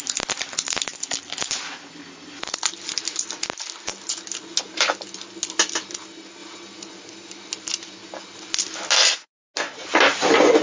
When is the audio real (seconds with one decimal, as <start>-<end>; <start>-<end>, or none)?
0.0-10.6